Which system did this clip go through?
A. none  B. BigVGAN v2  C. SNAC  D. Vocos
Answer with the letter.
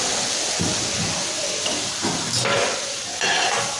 A